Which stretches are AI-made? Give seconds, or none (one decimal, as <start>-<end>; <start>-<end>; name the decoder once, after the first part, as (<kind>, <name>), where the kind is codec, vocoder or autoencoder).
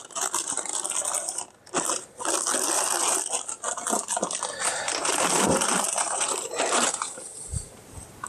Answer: 0.0-0.7 (vocoder, BigVGAN v2); 4.6-8.3